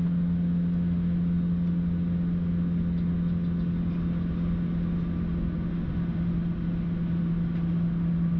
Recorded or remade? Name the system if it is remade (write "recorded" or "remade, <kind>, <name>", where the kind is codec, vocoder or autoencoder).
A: recorded